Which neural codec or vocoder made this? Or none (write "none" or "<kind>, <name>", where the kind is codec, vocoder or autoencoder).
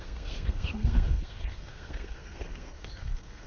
codec, SNAC